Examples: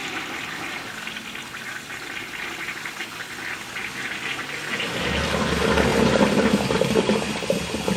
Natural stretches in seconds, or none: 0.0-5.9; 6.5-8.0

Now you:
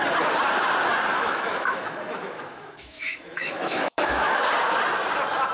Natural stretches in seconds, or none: 0.0-1.1; 4.4-5.5

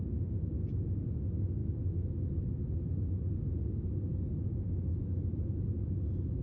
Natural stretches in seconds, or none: 0.0-6.4

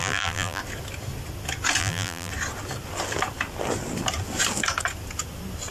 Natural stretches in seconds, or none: 0.6-1.8; 2.3-5.7

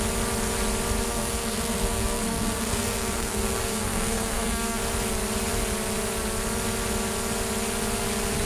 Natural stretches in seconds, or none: 0.0-1.0; 4.8-8.5

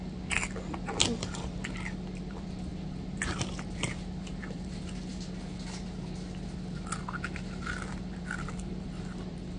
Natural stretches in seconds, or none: 5.1-7.7